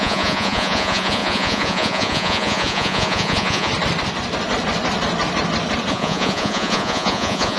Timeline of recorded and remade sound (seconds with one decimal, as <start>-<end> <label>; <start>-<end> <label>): 0.0-3.7 remade; 3.7-5.9 recorded; 5.9-7.6 remade